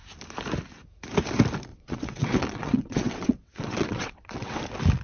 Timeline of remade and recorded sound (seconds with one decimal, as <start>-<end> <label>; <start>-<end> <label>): 0.0-1.7 recorded; 1.7-4.6 remade; 4.6-5.0 recorded